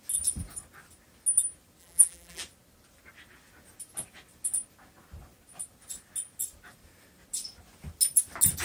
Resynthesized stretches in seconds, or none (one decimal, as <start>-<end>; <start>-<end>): 1.8-2.4